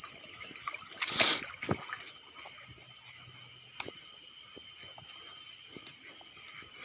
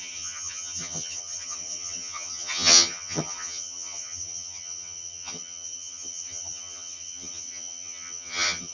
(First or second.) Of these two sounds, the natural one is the first